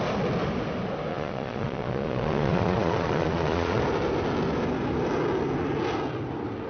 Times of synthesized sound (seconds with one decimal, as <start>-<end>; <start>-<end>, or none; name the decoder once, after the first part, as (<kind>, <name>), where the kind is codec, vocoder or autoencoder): 1.1-3.8 (vocoder, Vocos)